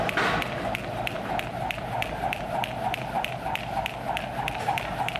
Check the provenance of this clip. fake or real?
real